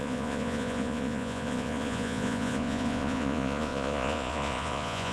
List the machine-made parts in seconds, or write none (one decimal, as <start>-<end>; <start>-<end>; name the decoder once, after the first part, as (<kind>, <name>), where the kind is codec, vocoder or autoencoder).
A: 0.0-5.1 (vocoder, Vocos)